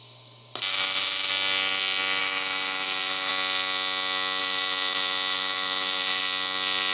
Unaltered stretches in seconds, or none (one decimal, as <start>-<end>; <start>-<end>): 0.0-0.7; 1.3-2.2; 3.3-4.4; 6.2-6.9

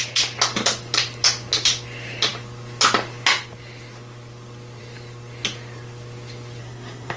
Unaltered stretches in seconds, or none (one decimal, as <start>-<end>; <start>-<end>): 0.0-6.6

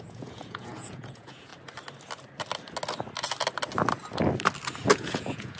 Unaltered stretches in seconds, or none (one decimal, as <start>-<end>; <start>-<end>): 1.5-4.9

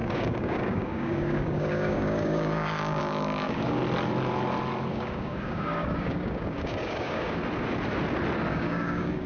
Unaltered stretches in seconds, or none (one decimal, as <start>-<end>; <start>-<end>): 3.8-4.9; 7.4-8.5

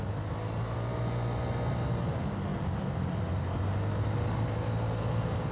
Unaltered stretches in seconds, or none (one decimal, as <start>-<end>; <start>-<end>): 0.0-5.5